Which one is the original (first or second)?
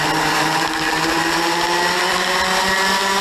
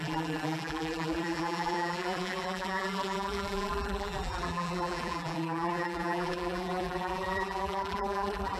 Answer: first